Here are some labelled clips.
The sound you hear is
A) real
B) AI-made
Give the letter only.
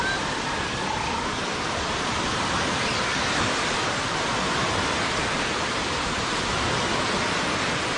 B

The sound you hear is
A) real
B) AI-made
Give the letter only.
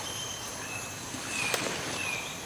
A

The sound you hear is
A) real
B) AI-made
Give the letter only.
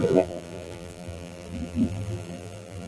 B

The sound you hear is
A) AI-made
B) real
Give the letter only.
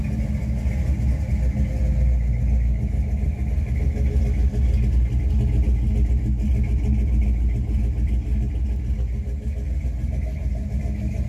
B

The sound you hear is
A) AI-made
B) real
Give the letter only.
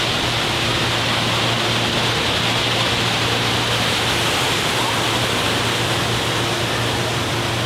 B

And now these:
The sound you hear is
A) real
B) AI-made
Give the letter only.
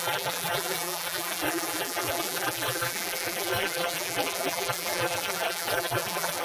B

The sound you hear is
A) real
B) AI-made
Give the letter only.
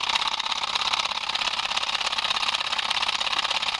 A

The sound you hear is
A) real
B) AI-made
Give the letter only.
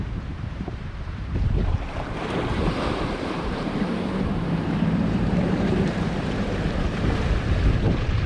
B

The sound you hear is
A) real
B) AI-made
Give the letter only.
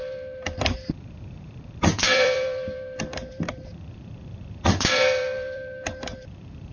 B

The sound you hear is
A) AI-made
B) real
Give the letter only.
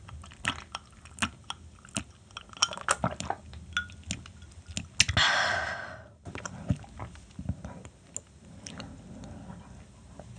B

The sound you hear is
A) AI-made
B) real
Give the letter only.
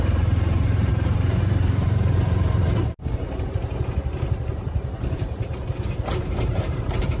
A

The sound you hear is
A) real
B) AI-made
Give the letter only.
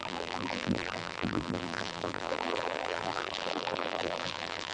B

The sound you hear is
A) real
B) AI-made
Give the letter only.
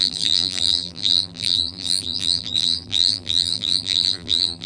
B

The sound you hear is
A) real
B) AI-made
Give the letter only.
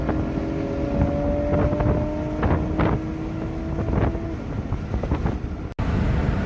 A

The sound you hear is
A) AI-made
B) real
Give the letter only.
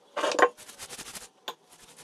B